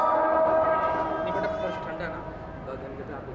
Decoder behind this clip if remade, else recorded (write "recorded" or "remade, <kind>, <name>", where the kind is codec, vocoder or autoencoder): recorded